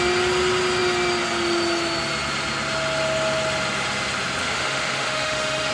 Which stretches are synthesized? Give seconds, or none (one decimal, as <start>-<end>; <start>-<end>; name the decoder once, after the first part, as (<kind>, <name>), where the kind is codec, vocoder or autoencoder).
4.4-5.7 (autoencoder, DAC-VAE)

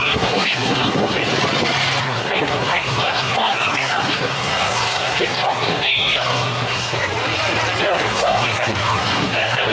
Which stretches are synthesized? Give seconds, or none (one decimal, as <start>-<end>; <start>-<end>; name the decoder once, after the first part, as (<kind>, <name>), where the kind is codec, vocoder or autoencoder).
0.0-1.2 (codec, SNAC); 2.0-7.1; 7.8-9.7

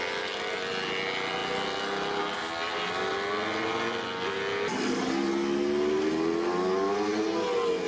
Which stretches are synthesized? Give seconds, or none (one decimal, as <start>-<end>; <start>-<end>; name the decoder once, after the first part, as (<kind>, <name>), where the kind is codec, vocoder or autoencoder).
none

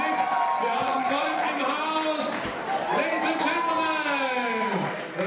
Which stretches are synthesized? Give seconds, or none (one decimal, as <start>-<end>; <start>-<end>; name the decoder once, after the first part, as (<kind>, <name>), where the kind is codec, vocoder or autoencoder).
0.8-1.5 (vocoder, Vocos)

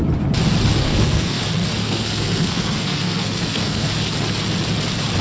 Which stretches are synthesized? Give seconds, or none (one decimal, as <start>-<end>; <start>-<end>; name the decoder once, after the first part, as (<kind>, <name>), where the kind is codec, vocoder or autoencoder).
0.8-1.4 (codec, SNAC); 1.8-3.9